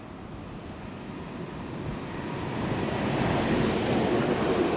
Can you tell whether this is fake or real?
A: real